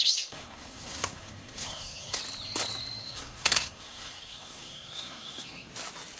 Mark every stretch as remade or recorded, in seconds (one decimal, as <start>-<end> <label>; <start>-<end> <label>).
0.0-2.2 remade; 2.2-3.0 recorded; 3.0-5.7 remade; 5.7-6.2 recorded